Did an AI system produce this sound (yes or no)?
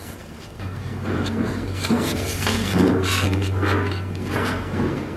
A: yes